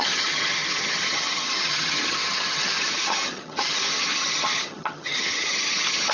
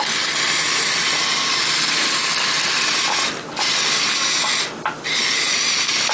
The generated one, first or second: first